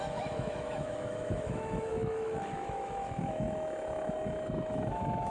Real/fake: fake